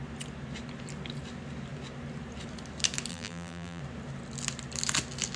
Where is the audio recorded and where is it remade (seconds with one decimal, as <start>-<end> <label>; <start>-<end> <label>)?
0.0-3.1 recorded; 3.1-3.8 remade; 3.8-5.4 recorded